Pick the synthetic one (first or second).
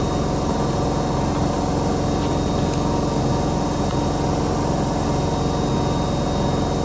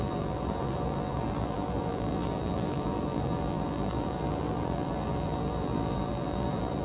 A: second